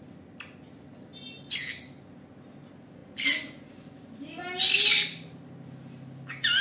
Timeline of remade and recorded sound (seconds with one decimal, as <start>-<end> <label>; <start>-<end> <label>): 0.0-6.6 recorded